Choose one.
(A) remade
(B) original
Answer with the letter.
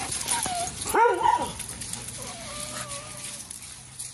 B